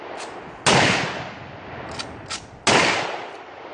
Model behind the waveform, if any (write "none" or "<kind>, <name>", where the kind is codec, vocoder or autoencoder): none